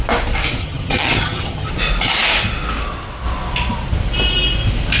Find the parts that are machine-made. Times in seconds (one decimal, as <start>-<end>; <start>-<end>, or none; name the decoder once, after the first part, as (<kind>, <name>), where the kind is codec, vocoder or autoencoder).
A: 0.6-1.7 (vocoder, HiFi-GAN)